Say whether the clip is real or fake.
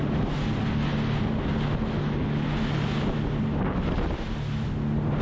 real